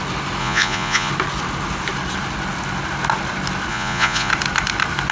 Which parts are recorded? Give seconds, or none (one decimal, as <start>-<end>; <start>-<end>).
0.0-0.4; 1.1-3.7; 4.3-5.1